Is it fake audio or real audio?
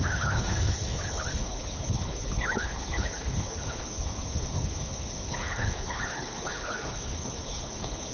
fake